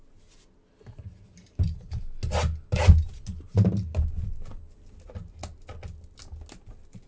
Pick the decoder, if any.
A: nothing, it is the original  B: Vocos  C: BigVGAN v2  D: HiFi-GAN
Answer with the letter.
A